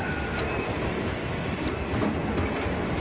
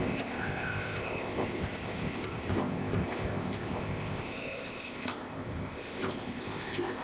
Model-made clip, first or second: second